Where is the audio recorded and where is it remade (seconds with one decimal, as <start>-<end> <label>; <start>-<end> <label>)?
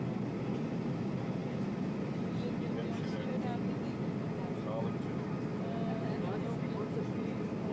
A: 0.0-7.7 recorded